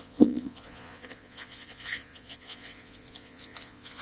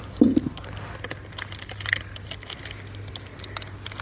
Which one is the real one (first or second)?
second